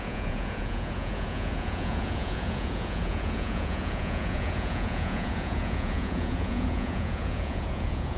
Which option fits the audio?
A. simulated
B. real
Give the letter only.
A